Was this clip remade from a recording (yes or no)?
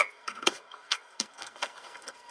yes